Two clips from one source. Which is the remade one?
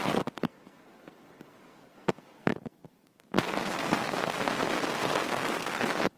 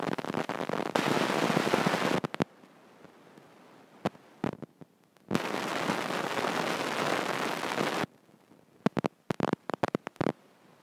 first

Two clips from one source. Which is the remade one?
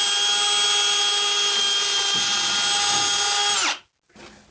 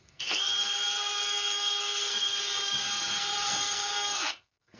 second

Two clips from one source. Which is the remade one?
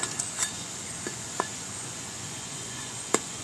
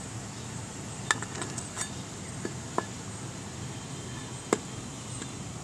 first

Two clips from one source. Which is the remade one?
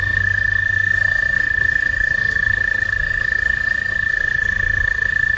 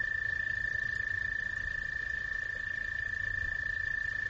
first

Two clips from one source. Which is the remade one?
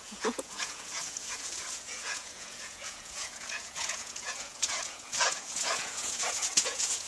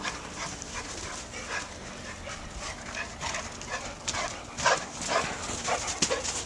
first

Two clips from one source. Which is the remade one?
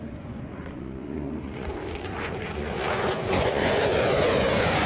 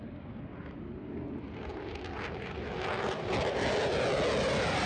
first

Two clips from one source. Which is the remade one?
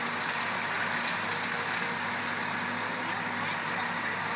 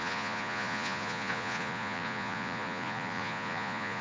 second